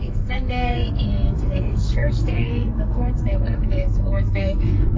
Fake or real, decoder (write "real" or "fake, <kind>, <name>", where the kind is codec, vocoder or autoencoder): fake, codec, SNAC